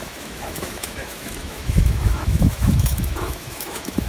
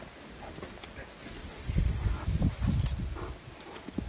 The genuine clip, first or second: second